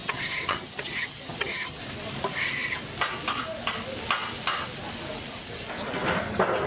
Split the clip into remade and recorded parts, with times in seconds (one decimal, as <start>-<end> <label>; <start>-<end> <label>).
0.0-1.8 remade; 1.8-6.7 recorded